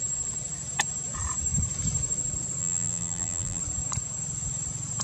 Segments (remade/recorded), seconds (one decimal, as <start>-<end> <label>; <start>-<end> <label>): 0.0-2.6 recorded; 2.6-3.6 remade; 3.6-5.0 recorded